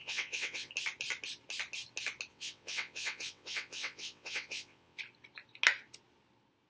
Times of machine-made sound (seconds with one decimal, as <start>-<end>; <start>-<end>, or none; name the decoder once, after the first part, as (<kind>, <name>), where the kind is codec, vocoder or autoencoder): 0.0-0.7 (vocoder, WaveNeXt); 2.3-5.0